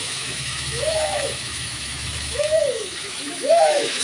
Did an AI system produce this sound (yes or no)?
yes